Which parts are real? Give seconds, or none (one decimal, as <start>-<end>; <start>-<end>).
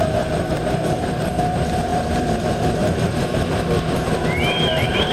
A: none